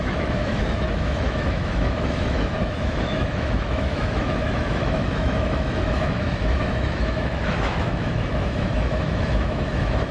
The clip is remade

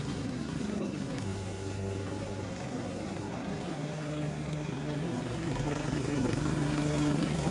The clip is remade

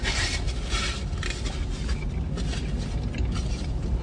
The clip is recorded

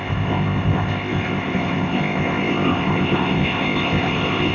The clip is remade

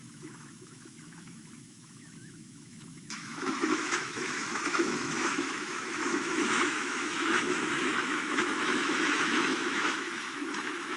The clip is remade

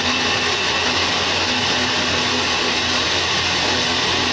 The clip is recorded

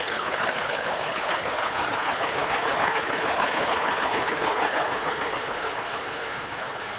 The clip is remade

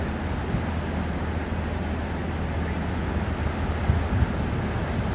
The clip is recorded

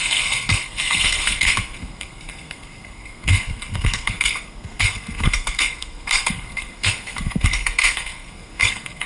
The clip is remade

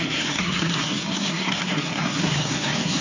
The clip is remade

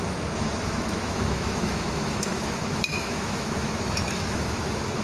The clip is remade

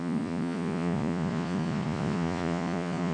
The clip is remade